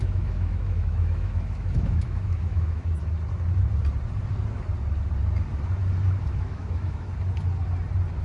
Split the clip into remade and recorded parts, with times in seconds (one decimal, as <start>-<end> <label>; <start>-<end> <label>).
0.0-3.0 remade; 3.0-6.2 recorded; 6.2-7.1 remade; 7.1-8.2 recorded